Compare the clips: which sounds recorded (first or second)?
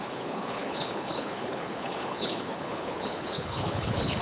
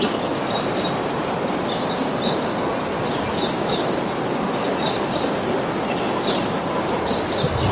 second